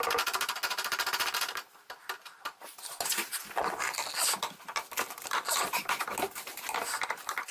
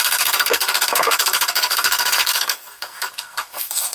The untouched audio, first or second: first